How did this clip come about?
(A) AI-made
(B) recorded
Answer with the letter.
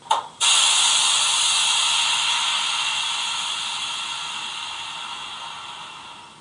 B